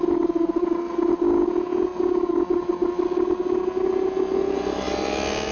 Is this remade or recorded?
recorded